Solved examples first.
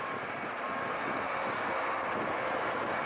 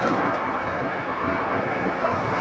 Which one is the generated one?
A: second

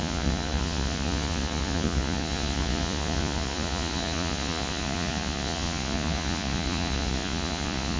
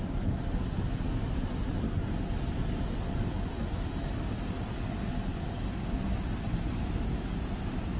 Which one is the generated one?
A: first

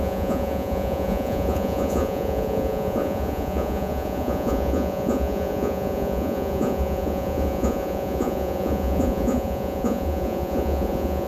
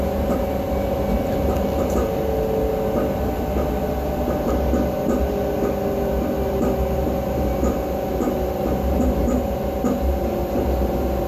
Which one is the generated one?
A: first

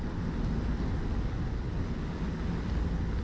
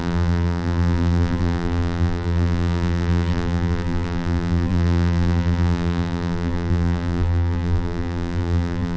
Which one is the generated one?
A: second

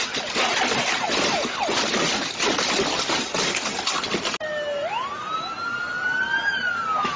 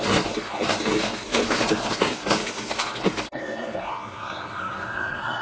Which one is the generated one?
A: second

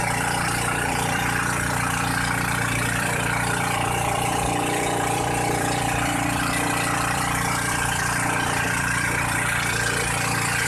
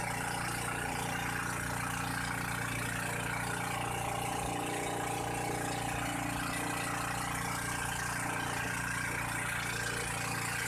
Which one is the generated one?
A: first